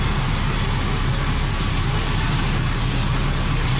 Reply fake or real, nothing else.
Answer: real